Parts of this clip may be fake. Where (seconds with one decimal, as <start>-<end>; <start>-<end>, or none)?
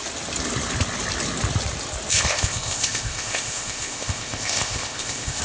2.1-5.4